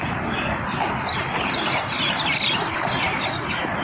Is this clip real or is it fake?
real